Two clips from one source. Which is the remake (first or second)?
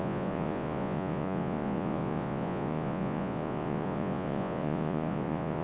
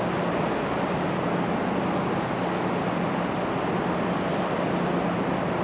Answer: first